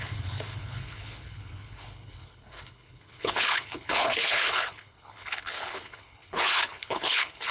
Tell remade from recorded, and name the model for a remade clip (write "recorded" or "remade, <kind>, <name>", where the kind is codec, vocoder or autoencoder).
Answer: remade, codec, HILCodec